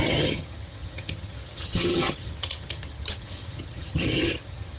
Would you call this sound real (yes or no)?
no